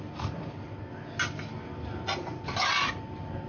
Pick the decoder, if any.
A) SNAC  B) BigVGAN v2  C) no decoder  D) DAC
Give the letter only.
C